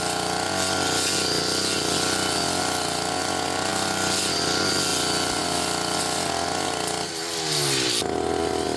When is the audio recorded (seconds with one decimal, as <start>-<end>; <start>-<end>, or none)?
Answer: 0.0-3.7; 4.2-8.8